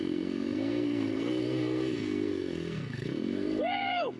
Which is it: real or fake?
fake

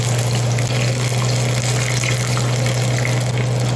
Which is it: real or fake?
real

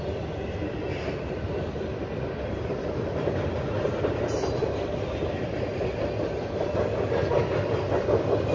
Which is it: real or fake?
real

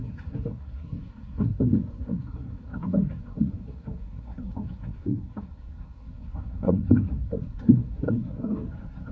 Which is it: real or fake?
fake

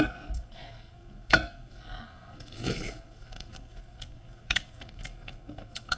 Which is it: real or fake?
fake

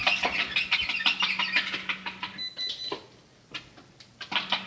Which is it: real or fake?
real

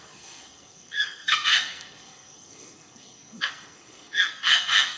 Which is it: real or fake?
fake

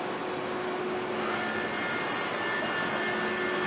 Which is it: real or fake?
real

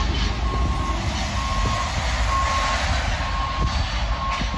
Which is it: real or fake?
real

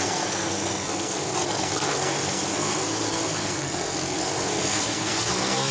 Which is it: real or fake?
fake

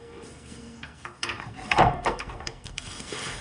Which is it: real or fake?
fake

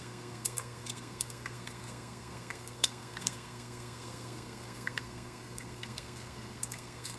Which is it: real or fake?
fake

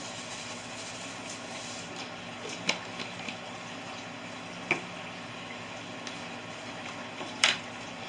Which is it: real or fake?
real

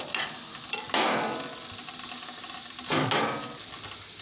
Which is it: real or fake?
real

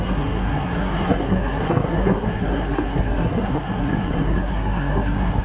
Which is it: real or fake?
fake